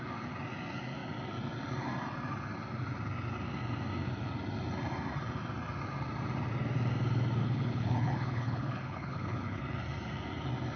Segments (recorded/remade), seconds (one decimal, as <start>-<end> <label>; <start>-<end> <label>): 0.0-7.4 recorded; 7.4-9.6 remade; 9.6-10.8 recorded